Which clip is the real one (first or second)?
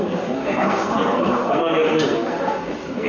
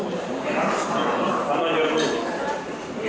second